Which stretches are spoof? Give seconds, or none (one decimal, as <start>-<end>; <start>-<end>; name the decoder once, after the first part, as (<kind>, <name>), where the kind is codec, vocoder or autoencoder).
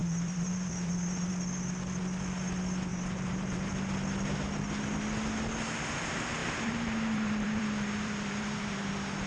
0.0-1.3 (vocoder, BigVGAN v2); 2.9-3.7; 6.4-8.9